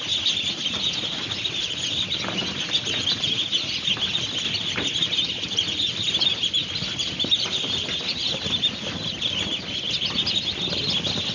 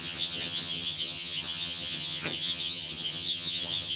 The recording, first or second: first